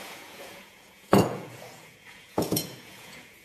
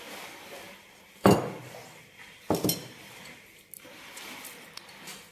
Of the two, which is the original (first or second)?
second